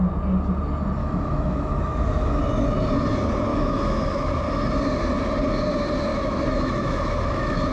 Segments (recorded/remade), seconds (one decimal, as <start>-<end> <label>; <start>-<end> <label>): 0.0-1.0 recorded; 1.0-2.4 remade; 2.4-3.5 recorded; 3.5-4.3 remade; 4.3-6.1 recorded; 6.1-7.7 remade